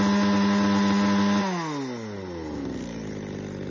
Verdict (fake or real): real